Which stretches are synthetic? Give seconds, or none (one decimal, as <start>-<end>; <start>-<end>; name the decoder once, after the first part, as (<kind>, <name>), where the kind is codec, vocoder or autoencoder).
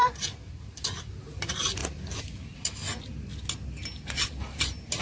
none